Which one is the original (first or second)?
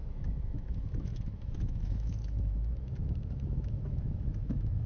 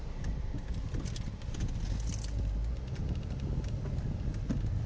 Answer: second